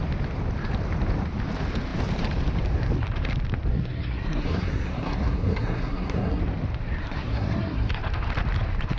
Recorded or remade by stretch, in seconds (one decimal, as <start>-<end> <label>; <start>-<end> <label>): 0.0-3.7 recorded; 3.7-6.4 remade; 6.4-7.0 recorded; 7.0-8.0 remade; 8.0-9.0 recorded